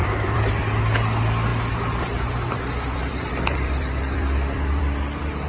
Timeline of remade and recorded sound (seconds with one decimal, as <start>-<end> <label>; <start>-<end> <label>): 0.0-0.5 remade; 0.5-1.5 recorded; 1.5-4.8 remade; 4.8-5.5 recorded